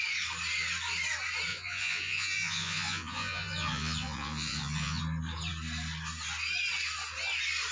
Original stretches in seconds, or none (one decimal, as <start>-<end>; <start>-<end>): 0.0-1.5; 5.0-7.7